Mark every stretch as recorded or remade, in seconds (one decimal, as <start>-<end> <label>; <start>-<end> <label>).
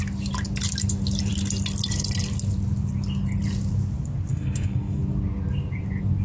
0.0-4.3 recorded; 4.3-5.0 remade; 5.0-6.2 recorded